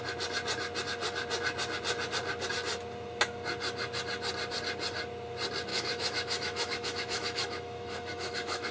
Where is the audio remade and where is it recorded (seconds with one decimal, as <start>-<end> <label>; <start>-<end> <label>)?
0.0-5.7 recorded; 5.7-8.7 remade